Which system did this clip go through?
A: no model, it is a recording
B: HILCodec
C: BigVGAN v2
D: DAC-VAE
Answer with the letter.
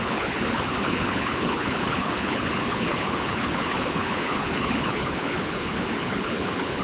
B